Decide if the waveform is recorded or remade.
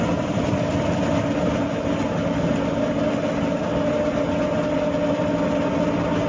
recorded